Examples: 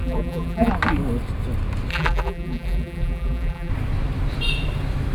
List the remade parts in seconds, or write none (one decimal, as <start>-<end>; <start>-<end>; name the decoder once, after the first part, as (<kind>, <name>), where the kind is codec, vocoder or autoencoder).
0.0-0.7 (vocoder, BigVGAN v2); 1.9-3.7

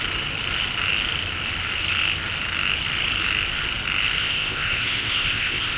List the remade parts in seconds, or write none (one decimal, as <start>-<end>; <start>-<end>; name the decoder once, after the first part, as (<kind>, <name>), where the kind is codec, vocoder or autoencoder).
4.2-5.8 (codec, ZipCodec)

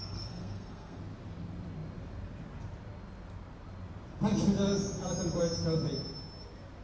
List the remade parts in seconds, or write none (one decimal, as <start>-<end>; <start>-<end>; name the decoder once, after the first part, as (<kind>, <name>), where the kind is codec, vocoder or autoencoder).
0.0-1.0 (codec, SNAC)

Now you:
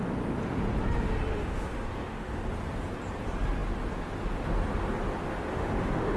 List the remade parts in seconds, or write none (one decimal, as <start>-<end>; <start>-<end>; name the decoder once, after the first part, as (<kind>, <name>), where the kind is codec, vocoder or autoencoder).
1.3-2.5 (autoencoder, DAC-VAE); 5.5-6.2

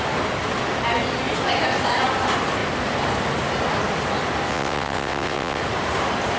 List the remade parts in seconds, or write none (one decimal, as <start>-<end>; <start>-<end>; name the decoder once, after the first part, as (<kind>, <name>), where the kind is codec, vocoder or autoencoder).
4.5-5.6 (vocoder, WaveNeXt)

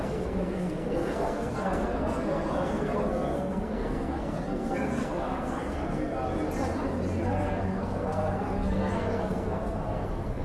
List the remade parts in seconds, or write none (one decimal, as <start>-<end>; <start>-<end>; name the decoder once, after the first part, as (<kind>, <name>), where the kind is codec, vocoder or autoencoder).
0.0-6.1 (codec, SNAC); 7.2-10.4

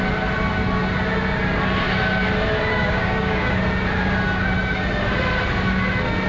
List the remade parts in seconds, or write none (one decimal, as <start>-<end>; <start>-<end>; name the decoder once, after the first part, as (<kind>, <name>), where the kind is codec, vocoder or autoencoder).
2.7-3.6 (codec, DAC)